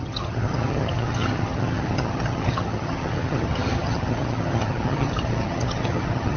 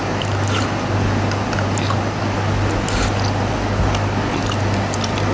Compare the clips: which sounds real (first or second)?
second